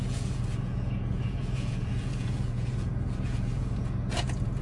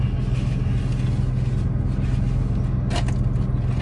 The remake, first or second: first